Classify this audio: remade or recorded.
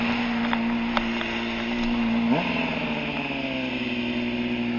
recorded